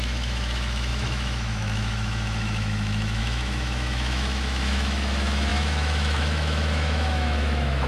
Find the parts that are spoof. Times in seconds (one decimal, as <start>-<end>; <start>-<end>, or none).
0.0-7.9